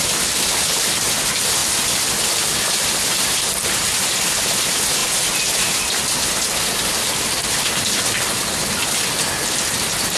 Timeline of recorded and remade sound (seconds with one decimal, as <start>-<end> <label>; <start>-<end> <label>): 0.0-10.2 recorded